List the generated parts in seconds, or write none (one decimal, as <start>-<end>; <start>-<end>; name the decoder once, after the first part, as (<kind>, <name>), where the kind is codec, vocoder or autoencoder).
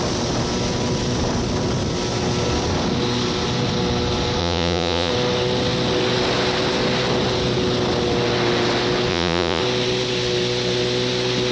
4.4-5.1 (vocoder, Vocos); 9.1-9.6